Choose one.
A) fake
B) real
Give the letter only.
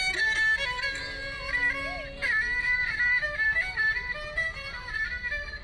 B